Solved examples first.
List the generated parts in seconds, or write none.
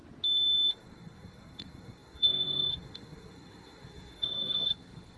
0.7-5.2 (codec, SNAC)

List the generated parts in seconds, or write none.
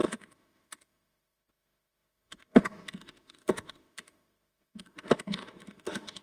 0.0-6.2 (autoencoder, DAC-VAE)